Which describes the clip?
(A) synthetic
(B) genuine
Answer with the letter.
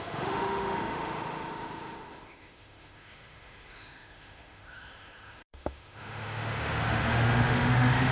A